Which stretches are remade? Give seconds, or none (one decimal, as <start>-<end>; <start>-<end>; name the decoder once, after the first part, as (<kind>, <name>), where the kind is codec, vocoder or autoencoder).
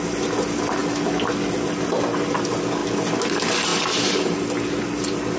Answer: none